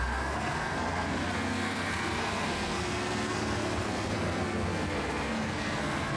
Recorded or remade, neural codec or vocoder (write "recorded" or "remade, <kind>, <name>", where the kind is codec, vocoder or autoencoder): remade, codec, SNAC